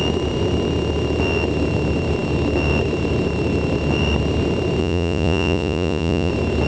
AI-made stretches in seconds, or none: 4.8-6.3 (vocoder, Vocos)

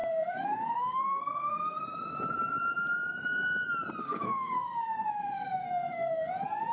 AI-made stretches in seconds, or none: 0.0-1.8 (codec, SNAC); 4.0-6.3

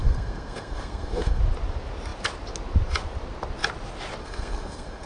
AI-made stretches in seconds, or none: 0.0-1.4 (codec, SNAC); 4.2-5.1

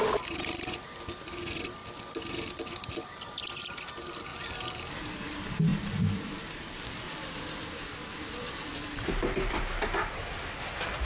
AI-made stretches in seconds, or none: 0.0-1.8 (vocoder, BigVGAN v2); 3.5-4.3; 4.9-11.0

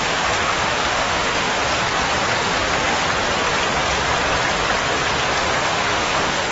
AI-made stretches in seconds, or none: 0.0-1.6 (autoencoder, DAC-VAE); 2.4-3.0; 5.6-6.5